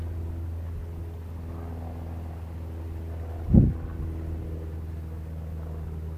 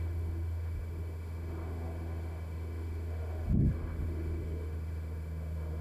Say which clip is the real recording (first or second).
first